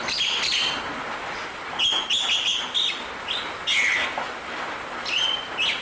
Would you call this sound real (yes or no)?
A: yes